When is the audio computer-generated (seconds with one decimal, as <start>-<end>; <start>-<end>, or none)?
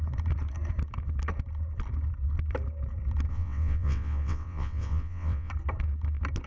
3.3-5.5